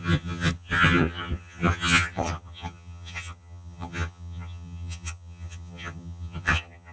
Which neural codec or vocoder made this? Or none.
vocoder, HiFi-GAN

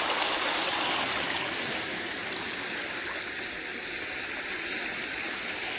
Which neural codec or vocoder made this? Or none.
none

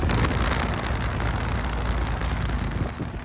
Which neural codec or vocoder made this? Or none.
none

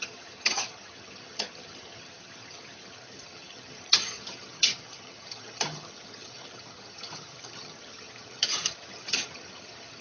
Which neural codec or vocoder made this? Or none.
vocoder, HiFi-GAN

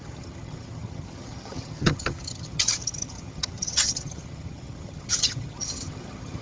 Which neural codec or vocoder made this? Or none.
vocoder, HiFi-GAN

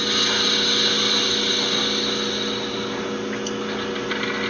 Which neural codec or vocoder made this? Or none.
none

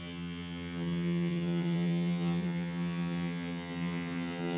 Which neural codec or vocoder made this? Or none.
vocoder, HiFi-GAN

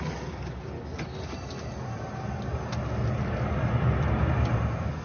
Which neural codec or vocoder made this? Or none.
none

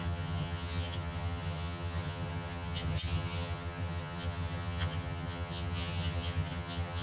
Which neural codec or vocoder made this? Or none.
vocoder, HiFi-GAN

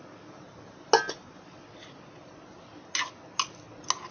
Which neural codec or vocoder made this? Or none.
none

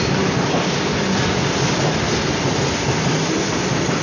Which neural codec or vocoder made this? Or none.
none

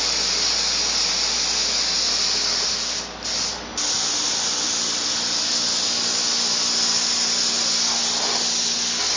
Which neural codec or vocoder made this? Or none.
none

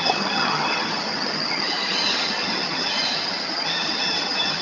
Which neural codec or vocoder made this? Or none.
vocoder, HiFi-GAN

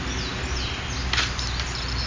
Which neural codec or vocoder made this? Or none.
none